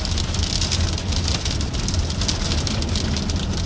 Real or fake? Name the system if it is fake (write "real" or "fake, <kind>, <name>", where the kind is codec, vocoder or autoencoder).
real